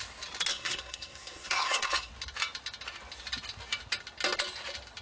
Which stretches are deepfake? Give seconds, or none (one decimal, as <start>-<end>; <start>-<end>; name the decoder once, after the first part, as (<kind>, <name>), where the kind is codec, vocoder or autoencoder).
0.5-2.1 (codec, SNAC)